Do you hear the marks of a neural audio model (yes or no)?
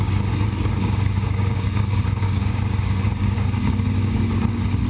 yes